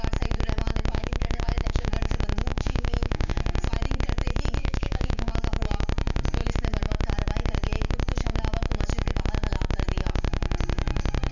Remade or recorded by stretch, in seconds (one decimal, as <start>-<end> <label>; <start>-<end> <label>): 0.0-0.9 recorded; 0.9-1.9 remade; 1.9-2.5 recorded; 2.5-3.3 remade; 3.3-4.6 recorded; 4.6-5.3 remade; 5.3-11.3 recorded